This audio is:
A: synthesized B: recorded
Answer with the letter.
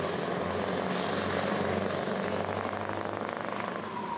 B